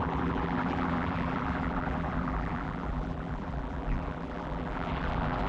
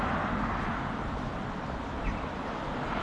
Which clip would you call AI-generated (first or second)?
first